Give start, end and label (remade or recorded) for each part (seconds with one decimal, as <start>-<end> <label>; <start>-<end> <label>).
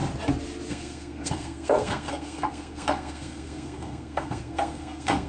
0.0-0.7 recorded; 0.7-5.3 remade